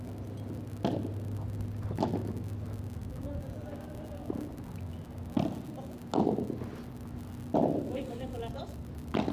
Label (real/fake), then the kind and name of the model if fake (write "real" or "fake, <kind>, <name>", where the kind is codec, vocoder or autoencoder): real